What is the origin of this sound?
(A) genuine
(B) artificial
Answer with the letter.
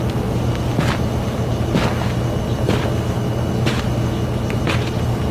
A